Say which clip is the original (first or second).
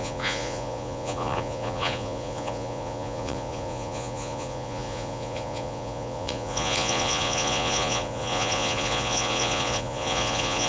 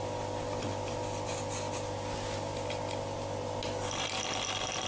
second